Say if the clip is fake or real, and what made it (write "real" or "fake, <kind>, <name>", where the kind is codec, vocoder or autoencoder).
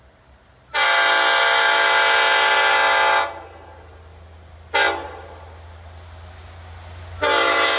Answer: real